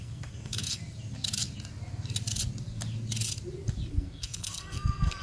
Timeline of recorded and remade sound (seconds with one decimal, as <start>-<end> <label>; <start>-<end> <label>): 0.0-0.8 remade; 0.8-3.9 recorded; 3.9-5.2 remade